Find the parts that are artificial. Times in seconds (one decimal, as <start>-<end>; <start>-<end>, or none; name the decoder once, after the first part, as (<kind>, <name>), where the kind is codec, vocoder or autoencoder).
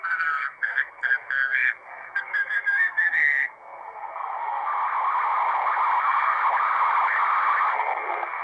0.0-4.7 (codec, SNAC); 6.0-6.4; 7.7-8.4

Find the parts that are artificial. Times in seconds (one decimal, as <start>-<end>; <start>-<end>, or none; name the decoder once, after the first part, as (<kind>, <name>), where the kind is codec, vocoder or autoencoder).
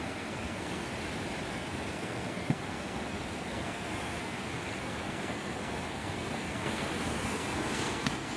0.0-0.9 (codec, SNAC); 1.5-8.4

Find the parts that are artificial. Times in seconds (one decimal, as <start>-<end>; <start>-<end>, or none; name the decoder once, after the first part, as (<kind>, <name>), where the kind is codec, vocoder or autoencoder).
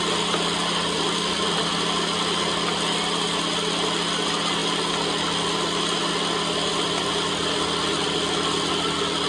none